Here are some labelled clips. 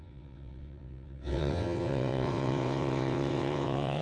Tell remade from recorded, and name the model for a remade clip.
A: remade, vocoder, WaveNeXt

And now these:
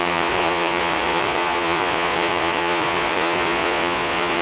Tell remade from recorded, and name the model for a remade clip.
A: remade, vocoder, Vocos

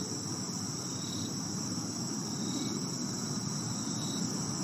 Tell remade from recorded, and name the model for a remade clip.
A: recorded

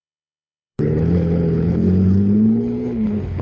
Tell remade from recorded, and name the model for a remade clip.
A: remade, codec, HILCodec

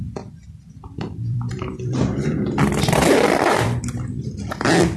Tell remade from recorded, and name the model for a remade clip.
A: remade, vocoder, BigVGAN v2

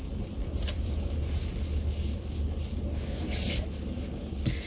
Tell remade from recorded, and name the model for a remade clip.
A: recorded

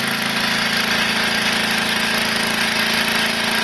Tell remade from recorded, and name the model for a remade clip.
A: recorded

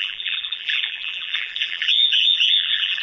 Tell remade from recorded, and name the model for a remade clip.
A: remade, vocoder, BigVGAN v2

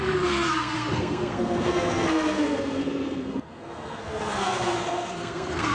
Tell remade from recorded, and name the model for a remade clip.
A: remade, codec, SNAC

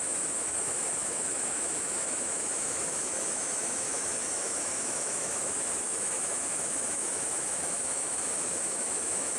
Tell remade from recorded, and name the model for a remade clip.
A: remade, autoencoder, DAC-VAE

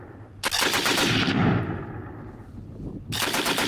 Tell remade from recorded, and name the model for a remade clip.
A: recorded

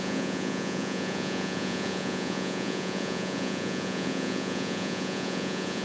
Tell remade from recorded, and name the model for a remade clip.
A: remade, vocoder, Vocos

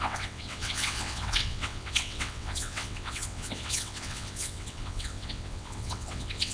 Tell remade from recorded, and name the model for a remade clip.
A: remade, vocoder, WaveNeXt